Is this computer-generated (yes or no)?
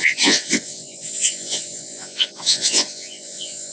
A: yes